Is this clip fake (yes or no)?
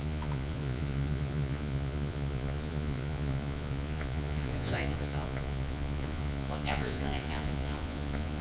yes